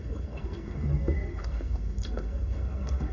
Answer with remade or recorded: remade